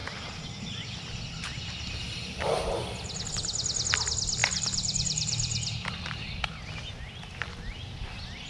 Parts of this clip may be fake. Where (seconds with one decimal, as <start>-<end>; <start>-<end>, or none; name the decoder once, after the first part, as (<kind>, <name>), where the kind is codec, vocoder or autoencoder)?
4.4-6.4 (vocoder, BigVGAN v2)